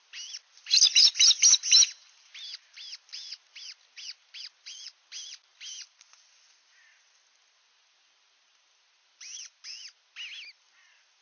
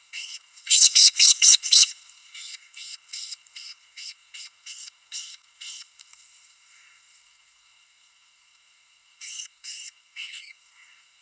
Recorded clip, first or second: first